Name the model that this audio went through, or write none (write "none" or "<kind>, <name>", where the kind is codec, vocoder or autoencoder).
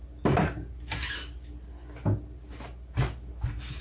none